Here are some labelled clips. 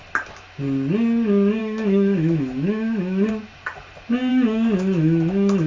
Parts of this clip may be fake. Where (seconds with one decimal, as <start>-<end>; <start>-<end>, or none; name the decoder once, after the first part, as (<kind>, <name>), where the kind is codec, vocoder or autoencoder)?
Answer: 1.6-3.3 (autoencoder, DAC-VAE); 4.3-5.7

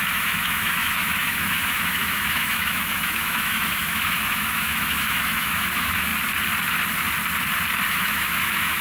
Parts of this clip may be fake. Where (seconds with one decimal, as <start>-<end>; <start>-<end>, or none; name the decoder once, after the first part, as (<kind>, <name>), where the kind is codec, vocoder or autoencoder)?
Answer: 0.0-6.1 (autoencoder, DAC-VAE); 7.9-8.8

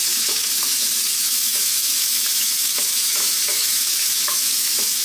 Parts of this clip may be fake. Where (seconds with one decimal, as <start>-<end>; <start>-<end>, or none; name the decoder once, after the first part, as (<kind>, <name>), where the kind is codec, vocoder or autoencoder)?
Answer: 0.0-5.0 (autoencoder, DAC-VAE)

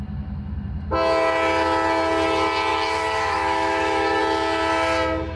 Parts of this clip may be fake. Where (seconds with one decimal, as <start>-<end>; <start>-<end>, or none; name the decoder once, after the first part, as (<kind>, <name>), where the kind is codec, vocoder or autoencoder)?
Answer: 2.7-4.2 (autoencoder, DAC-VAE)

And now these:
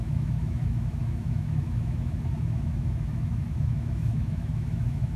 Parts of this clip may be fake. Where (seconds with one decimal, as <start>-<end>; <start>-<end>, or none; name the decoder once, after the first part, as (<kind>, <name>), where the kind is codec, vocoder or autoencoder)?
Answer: 0.0-5.2 (autoencoder, DAC-VAE)

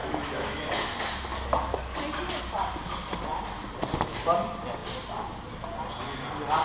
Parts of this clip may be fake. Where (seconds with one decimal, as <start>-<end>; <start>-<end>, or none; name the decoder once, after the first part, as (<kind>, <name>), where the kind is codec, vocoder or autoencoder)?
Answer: 0.0-0.7 (autoencoder, DAC-VAE)